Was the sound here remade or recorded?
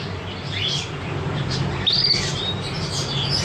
recorded